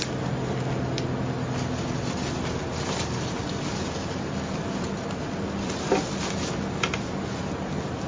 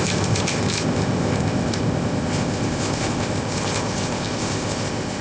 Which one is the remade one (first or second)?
second